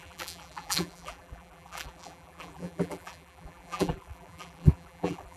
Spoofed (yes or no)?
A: yes